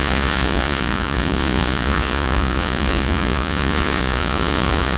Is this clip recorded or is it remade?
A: remade